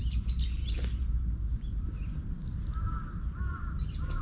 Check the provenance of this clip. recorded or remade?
recorded